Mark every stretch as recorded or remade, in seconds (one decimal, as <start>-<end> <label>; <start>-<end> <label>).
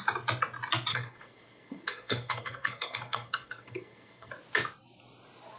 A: 0.0-0.9 recorded; 0.9-4.3 remade; 4.3-5.6 recorded